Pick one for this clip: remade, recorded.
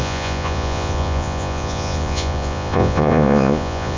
remade